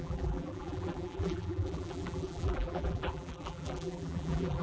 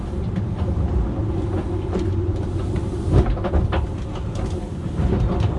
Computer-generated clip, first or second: first